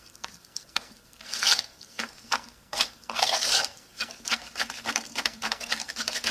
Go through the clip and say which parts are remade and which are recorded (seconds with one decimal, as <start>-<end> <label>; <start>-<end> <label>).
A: 0.0-6.3 remade